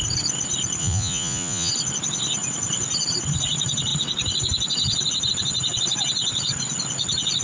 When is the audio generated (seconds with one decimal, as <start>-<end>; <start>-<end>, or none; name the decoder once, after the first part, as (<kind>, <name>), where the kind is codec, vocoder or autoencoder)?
0.8-1.7 (vocoder, Vocos)